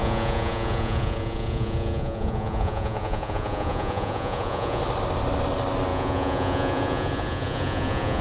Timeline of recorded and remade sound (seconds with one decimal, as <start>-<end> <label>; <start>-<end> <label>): 0.0-4.8 remade; 4.8-5.9 recorded; 5.9-8.2 remade